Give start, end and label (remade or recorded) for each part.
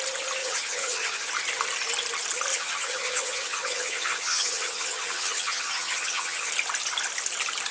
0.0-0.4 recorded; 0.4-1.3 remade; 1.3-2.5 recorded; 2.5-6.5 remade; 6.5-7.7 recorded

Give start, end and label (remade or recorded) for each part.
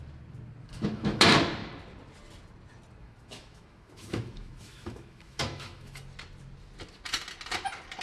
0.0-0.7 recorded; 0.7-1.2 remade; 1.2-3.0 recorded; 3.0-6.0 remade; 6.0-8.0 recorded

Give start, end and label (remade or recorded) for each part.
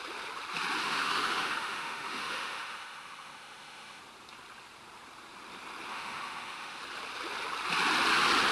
0.0-0.8 recorded; 0.8-4.0 remade; 4.0-5.9 recorded; 5.9-6.8 remade; 6.8-8.5 recorded